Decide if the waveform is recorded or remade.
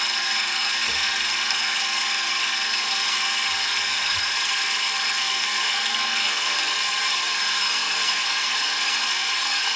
remade